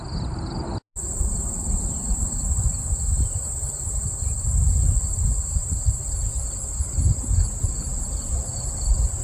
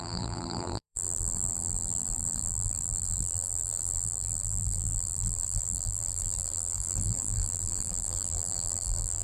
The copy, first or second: second